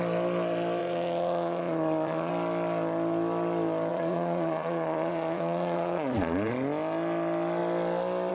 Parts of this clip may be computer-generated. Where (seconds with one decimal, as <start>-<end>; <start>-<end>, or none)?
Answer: 0.8-2.3; 3.9-6.5